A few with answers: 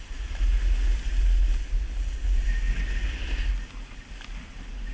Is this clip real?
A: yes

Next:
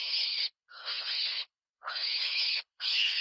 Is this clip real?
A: no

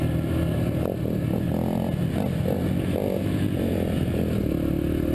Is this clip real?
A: yes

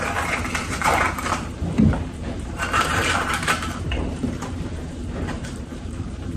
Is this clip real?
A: no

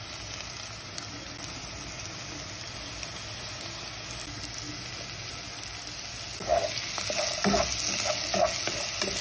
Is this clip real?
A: yes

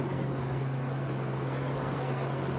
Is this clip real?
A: no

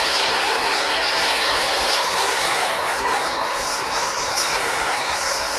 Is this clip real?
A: no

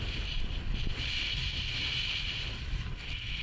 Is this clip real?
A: yes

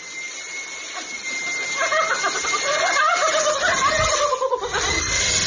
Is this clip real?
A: no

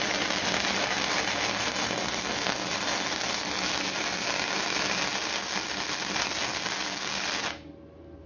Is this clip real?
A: yes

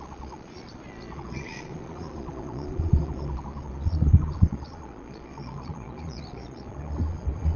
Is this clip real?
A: no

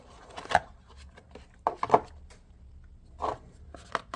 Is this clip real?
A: yes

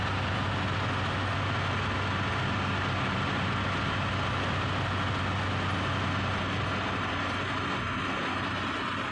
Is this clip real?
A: yes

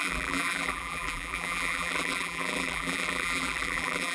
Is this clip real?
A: no